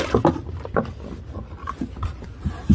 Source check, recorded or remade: remade